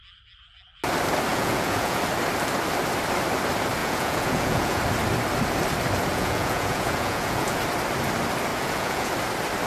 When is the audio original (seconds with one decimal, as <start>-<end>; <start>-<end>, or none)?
0.0-1.3; 2.0-3.8; 4.8-6.1; 7.6-8.5; 9.1-9.7